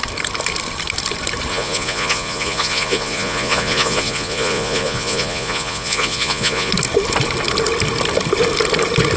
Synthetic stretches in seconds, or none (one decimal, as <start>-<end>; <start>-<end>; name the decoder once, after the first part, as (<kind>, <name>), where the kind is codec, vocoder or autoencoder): 1.5-6.7 (vocoder, Vocos)